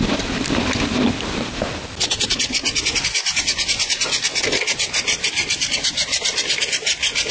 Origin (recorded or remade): recorded